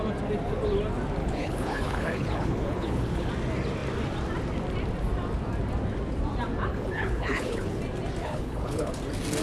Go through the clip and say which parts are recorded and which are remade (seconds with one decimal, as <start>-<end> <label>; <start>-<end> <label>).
0.0-1.2 recorded; 1.2-3.3 remade; 3.3-6.7 recorded; 6.7-7.8 remade; 7.8-8.2 recorded; 8.2-8.9 remade; 8.9-9.4 recorded